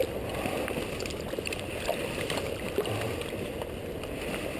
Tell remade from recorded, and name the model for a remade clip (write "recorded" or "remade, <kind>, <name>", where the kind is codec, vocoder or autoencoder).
recorded